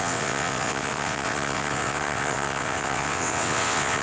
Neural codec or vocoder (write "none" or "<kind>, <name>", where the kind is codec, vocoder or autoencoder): vocoder, WaveNeXt